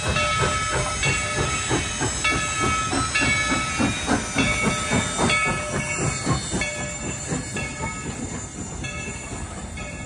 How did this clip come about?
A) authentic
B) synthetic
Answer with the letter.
A